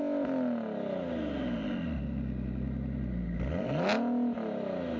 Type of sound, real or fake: real